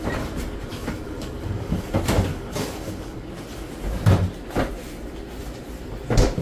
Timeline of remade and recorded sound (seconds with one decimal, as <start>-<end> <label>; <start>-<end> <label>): 0.0-0.7 recorded; 0.7-1.9 remade; 1.9-2.3 recorded; 2.3-3.3 remade; 3.3-6.4 recorded